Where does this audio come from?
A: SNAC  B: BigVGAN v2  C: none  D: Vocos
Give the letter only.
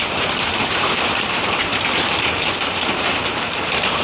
B